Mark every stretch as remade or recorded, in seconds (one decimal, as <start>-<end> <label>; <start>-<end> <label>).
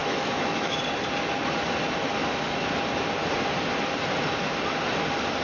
0.0-0.8 remade; 0.8-5.4 recorded